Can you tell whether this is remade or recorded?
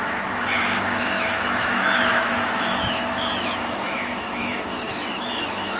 remade